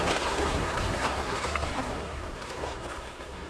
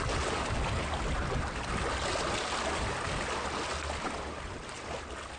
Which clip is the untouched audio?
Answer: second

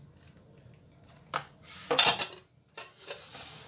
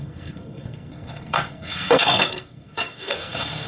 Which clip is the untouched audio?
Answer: first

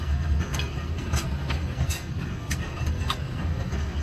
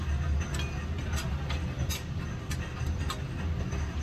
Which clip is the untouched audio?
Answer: second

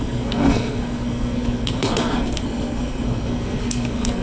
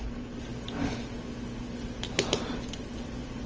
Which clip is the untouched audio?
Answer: second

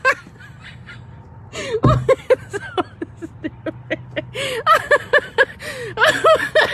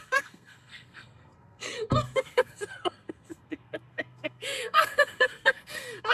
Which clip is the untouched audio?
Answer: first